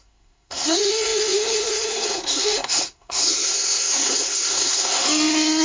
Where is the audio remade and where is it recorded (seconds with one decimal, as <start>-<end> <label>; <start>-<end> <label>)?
0.0-5.6 remade